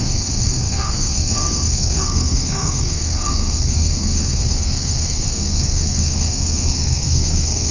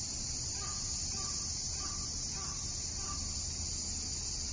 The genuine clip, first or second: second